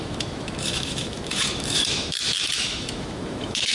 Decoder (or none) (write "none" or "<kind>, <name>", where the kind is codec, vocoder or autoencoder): autoencoder, DAC-VAE